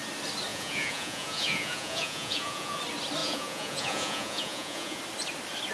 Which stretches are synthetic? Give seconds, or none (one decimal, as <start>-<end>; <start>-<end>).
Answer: 0.5-2.8; 3.2-5.0